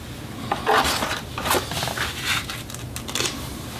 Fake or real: real